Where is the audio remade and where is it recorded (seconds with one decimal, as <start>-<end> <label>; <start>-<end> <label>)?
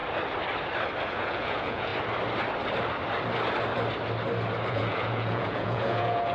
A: 0.0-1.1 recorded; 1.1-1.9 remade; 1.9-4.7 recorded; 4.7-6.3 remade